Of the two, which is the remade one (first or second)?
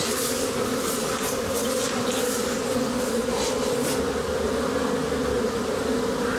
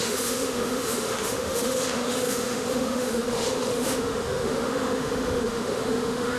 second